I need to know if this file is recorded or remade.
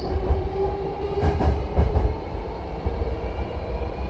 remade